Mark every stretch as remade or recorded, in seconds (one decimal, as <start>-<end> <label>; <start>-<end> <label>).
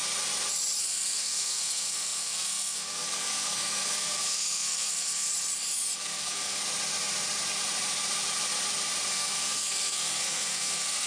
0.0-0.8 recorded; 0.8-5.3 remade; 5.3-6.0 recorded; 6.0-6.6 remade; 6.6-9.1 recorded; 9.1-11.1 remade